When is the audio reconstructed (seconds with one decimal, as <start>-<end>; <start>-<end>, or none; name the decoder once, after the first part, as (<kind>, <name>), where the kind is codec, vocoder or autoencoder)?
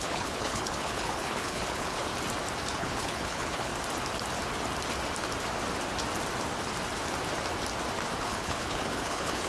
0.0-2.1 (codec, HILCodec); 2.7-3.7; 8.2-9.5